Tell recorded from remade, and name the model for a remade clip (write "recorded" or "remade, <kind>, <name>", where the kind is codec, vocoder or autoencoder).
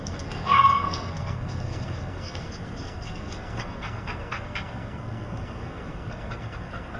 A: remade, codec, SNAC